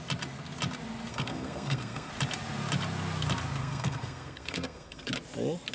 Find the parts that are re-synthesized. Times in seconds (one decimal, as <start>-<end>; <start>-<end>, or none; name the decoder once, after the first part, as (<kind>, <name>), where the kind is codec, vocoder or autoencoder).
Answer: 1.1-2.1 (codec, SNAC); 3.6-5.1